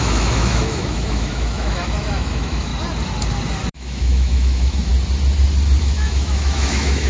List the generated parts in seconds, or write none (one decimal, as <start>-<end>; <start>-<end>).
0.0-2.7; 3.7-4.9; 5.8-7.1